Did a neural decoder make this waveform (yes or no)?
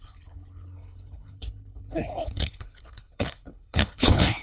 yes